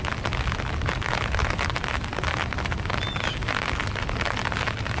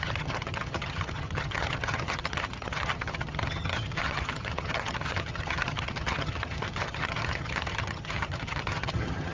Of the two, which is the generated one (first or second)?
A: second